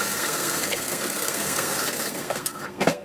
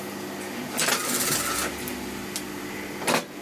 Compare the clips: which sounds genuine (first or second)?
second